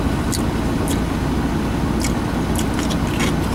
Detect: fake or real real